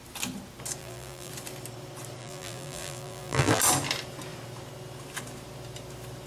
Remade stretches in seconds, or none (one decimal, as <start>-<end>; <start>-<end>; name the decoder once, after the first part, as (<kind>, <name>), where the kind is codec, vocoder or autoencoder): 0.8-1.3 (vocoder, BigVGAN v2); 2.2-3.6